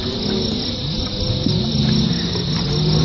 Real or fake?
real